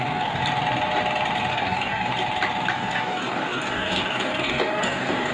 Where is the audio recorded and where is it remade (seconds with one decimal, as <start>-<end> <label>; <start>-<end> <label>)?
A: 0.0-0.4 remade; 0.4-1.5 recorded; 1.5-2.1 remade; 2.1-2.7 recorded; 2.7-5.3 remade